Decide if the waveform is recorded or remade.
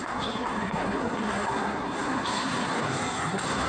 remade